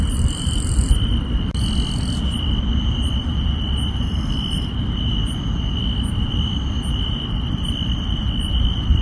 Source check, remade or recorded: recorded